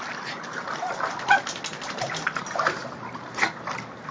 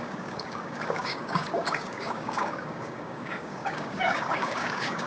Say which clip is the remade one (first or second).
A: second